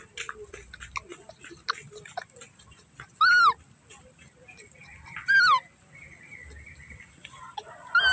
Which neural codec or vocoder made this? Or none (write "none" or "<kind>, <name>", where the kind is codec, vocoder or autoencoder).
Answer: none